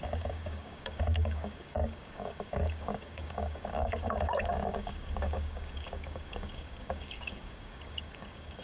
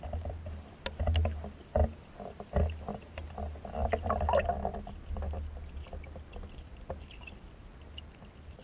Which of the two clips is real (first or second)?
second